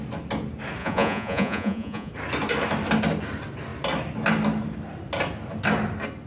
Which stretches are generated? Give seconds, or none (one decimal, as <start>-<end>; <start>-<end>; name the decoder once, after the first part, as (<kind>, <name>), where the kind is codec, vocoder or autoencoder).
0.8-2.1 (vocoder, Vocos)